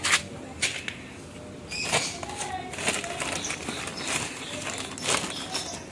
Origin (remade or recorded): recorded